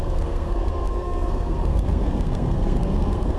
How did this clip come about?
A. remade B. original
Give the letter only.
A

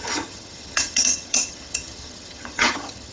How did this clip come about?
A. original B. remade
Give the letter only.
B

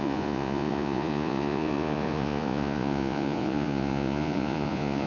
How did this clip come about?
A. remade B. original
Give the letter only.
A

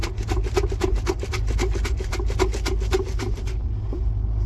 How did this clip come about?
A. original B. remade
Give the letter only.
A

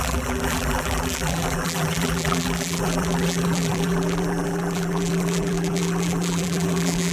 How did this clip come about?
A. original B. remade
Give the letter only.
B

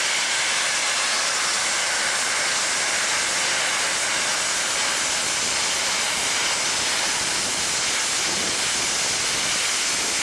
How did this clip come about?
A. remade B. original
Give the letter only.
B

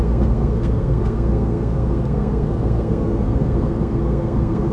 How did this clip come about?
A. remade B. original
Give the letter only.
A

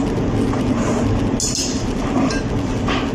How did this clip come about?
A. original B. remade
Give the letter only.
A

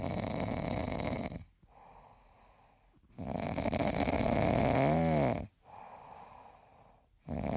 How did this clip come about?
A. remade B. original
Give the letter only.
B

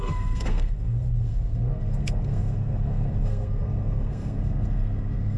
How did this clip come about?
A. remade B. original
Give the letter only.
A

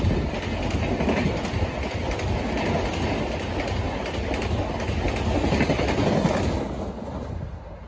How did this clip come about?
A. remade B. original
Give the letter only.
B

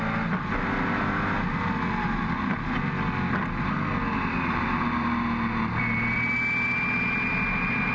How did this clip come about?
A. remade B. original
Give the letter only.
B